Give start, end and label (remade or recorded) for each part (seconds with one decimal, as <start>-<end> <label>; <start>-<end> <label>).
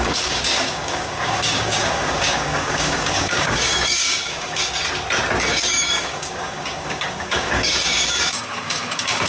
0.0-4.6 remade; 4.6-5.5 recorded; 5.5-9.3 remade